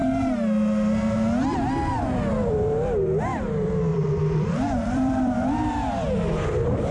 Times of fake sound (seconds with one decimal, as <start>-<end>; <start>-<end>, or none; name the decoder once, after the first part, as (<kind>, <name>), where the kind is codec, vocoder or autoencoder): 3.9-5.6 (vocoder, BigVGAN v2)